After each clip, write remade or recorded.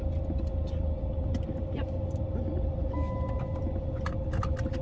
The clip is recorded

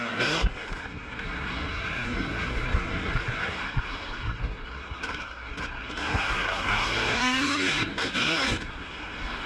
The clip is remade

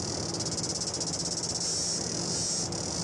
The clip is recorded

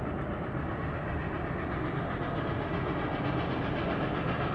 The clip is recorded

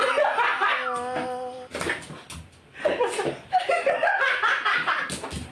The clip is recorded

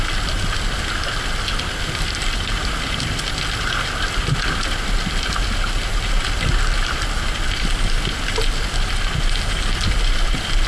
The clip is recorded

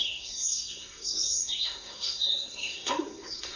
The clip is remade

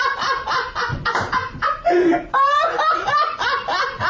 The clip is recorded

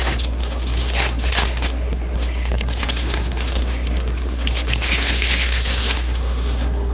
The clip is remade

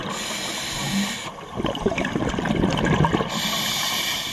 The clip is recorded